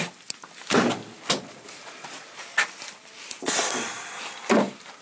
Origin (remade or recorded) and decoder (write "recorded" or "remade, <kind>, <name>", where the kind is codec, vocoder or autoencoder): recorded